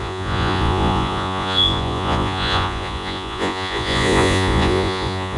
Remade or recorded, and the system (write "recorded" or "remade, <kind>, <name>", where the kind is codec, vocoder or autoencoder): remade, vocoder, Vocos